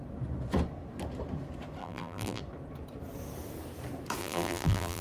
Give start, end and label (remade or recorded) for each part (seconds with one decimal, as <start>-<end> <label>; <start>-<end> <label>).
0.0-1.8 recorded; 1.8-2.4 remade; 2.4-4.2 recorded; 4.2-5.0 remade

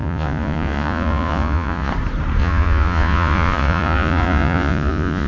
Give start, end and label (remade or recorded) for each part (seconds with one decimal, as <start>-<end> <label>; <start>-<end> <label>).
0.0-1.9 remade; 1.9-2.4 recorded; 2.4-5.3 remade

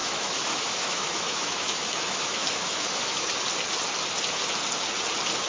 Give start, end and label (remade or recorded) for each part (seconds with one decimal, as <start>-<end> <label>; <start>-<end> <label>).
0.0-3.3 remade; 3.3-5.5 recorded

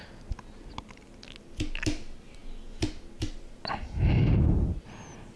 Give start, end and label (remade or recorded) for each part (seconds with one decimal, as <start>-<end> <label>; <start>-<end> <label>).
0.0-5.4 recorded

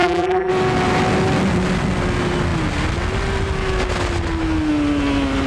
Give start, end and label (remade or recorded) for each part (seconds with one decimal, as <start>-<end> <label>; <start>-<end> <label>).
0.0-0.5 remade; 0.5-5.5 recorded

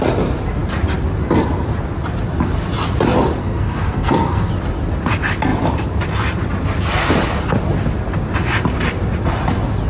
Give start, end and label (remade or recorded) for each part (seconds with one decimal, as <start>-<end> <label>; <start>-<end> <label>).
0.0-3.4 recorded; 3.4-4.5 remade; 4.5-9.9 recorded

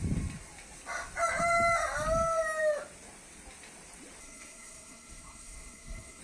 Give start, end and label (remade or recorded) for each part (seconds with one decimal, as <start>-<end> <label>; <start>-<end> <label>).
0.0-4.2 recorded; 4.2-6.2 remade

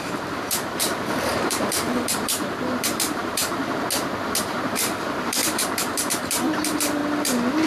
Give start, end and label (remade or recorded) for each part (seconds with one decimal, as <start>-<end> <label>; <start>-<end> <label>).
0.0-3.6 remade; 3.6-4.5 recorded; 4.5-7.0 remade; 7.0-7.7 recorded